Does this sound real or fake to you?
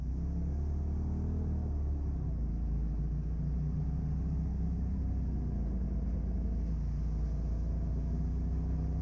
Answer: real